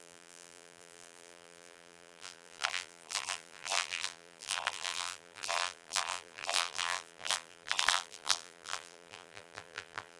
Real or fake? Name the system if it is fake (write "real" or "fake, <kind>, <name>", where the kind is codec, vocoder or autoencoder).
fake, vocoder, BigVGAN v2